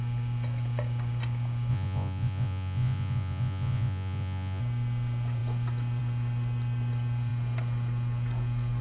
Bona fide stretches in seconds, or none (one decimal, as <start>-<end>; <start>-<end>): 0.0-1.7; 4.6-8.8